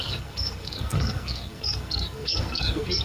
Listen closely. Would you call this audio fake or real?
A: fake